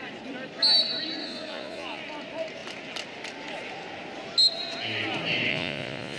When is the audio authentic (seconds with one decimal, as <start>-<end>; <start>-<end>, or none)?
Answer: 0.0-1.2; 2.0-5.5